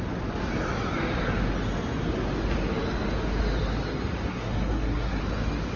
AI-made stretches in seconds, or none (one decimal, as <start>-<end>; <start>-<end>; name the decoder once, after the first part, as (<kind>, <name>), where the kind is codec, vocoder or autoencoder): 4.3-5.2 (codec, SNAC)